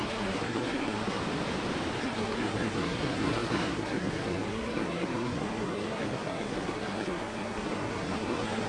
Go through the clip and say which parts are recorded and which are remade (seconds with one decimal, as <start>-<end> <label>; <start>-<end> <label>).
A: 0.0-1.2 remade; 1.2-2.0 recorded; 2.0-8.7 remade